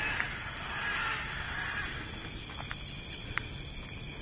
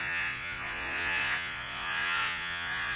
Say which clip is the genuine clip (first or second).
first